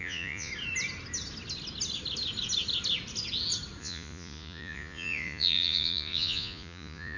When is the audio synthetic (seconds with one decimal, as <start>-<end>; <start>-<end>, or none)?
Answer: 0.0-0.5; 3.8-7.2